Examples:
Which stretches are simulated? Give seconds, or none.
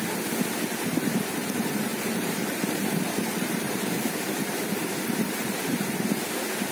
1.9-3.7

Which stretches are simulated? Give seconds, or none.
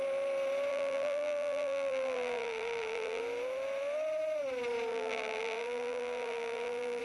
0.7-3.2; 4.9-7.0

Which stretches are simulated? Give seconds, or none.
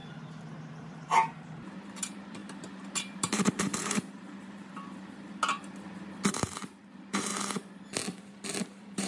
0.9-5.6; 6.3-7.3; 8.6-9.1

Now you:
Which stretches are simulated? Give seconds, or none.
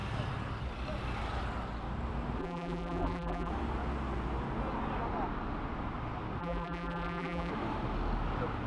2.4-3.5; 6.4-7.5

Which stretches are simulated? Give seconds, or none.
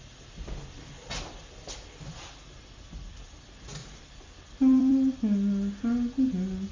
3.8-5.2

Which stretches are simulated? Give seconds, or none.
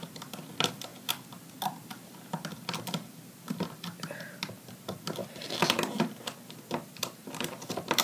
0.0-8.0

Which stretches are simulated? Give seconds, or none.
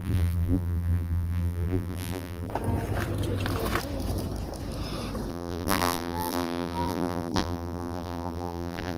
0.0-2.5; 5.3-9.0